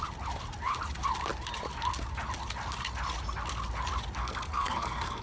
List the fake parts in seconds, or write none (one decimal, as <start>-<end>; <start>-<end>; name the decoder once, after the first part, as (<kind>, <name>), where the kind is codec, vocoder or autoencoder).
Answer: 4.2-5.2 (codec, SNAC)